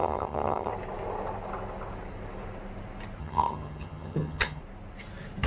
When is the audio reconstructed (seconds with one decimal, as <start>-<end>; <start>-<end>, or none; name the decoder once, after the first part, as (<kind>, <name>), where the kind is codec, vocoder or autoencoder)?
0.0-0.7 (vocoder, HiFi-GAN); 3.2-4.6